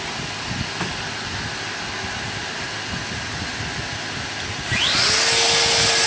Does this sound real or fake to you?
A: real